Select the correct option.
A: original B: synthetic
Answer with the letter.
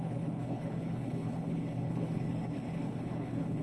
B